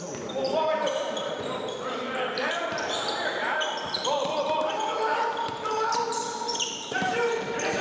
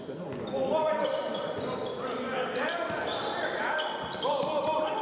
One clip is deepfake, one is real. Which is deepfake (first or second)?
first